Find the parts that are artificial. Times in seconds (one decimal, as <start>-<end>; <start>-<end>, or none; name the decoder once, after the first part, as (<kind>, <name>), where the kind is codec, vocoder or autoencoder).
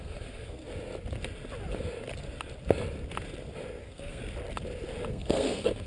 0.0-0.6 (codec, SNAC); 3.8-4.2; 5.1-5.9